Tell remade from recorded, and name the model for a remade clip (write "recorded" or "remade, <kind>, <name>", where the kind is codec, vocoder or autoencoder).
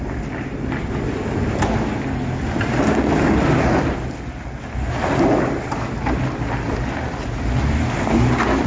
recorded